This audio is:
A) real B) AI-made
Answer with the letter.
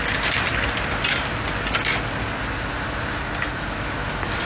A